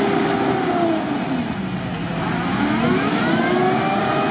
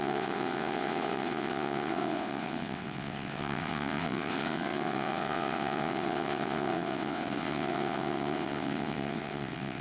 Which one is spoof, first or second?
second